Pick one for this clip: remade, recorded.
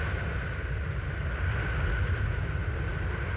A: recorded